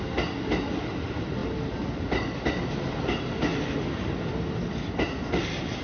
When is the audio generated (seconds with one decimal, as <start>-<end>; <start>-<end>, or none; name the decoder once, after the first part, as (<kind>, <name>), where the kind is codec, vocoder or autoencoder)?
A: none